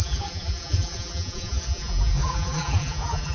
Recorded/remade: remade